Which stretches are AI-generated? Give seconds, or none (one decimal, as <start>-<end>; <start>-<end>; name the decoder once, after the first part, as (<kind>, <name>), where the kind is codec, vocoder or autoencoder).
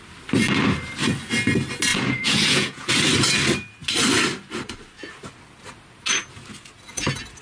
1.9-2.9 (vocoder, Vocos)